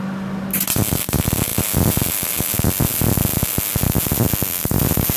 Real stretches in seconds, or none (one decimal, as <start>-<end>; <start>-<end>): 0.0-5.2